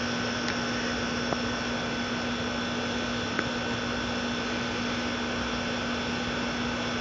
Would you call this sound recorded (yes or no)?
yes